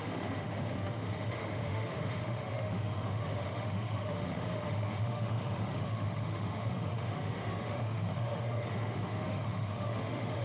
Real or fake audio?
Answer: fake